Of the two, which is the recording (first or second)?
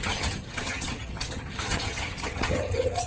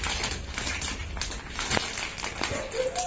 second